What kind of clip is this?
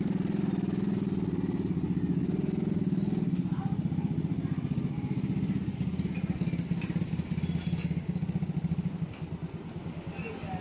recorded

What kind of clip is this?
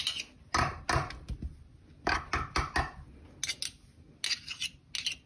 recorded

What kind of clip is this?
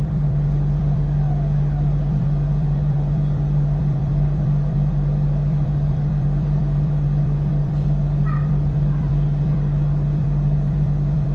remade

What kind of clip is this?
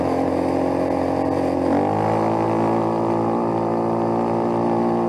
recorded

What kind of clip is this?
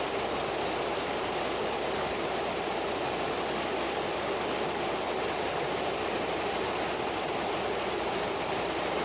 recorded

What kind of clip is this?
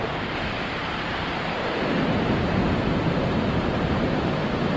remade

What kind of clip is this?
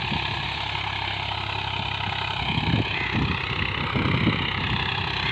recorded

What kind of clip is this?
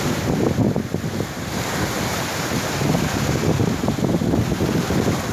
recorded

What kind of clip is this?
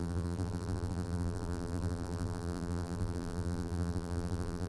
remade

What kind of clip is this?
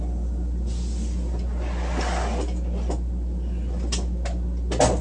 recorded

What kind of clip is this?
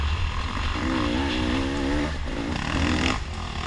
recorded